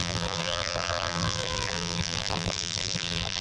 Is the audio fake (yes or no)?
yes